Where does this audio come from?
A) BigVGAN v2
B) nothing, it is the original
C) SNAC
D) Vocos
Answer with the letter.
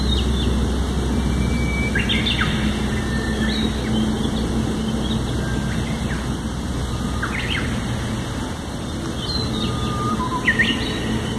B